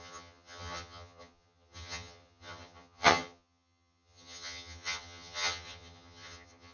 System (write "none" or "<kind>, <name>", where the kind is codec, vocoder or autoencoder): vocoder, HiFi-GAN